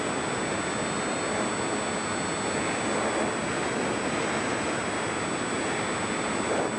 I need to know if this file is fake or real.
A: real